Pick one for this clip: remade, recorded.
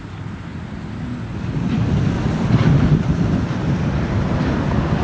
recorded